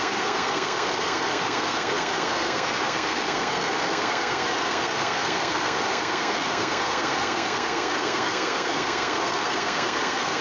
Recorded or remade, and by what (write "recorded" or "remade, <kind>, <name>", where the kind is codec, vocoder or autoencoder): remade, codec, SNAC